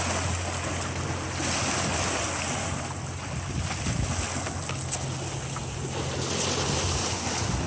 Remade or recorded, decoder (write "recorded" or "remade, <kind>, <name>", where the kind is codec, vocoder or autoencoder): recorded